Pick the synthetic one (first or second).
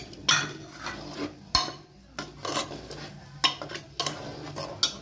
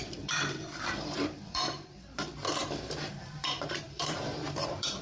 second